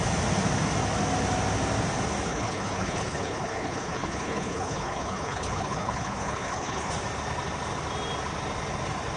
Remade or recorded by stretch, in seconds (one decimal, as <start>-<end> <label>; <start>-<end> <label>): 0.0-2.3 recorded; 2.3-6.9 remade; 6.9-9.2 recorded